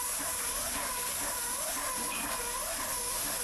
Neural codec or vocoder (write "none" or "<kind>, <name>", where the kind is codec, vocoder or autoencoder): none